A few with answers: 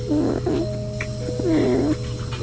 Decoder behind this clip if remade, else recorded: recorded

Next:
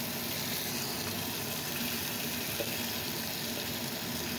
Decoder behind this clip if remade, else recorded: recorded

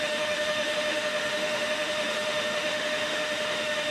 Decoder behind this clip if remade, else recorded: remade, autoencoder, DAC-VAE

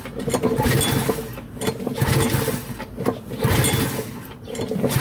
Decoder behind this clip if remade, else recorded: recorded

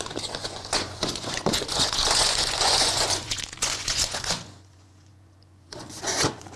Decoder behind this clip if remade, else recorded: remade, vocoder, Vocos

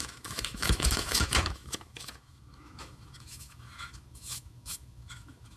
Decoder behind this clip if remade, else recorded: remade, autoencoder, DAC-VAE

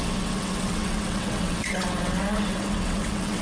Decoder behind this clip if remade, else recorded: remade, vocoder, WaveNeXt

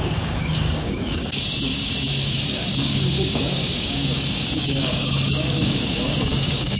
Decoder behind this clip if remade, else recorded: remade, codec, DAC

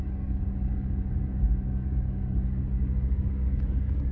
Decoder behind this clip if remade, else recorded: remade, codec, DAC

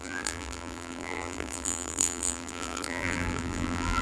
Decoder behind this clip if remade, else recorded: remade, vocoder, BigVGAN v2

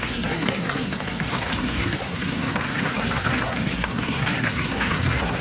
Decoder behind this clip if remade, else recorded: remade, codec, SNAC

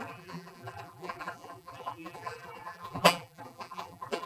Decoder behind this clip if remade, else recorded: remade, vocoder, BigVGAN v2